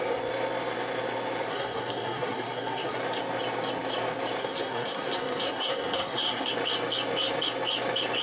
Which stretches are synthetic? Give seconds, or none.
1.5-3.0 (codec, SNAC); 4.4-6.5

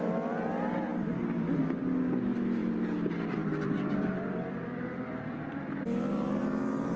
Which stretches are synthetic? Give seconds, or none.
0.9-1.6 (vocoder, BigVGAN v2); 2.6-6.4